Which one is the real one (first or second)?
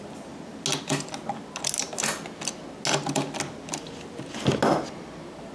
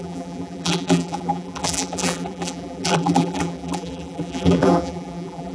first